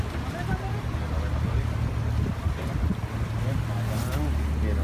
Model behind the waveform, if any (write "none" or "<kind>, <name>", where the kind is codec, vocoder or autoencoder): none